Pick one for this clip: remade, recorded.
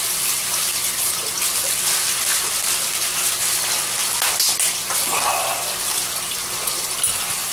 recorded